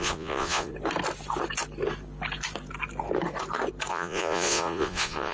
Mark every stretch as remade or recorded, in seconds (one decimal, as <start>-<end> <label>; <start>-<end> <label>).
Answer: 0.0-0.7 remade; 0.7-3.9 recorded; 3.9-5.3 remade